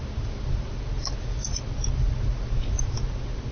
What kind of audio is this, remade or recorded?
recorded